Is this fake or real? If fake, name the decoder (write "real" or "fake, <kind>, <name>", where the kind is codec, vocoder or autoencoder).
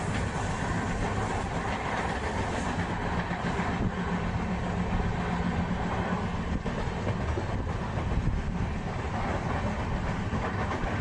real